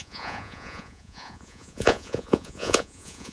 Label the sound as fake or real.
fake